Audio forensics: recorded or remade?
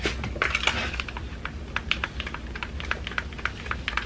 recorded